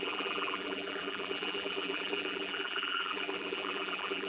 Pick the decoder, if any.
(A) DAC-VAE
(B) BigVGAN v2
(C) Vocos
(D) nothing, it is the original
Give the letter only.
B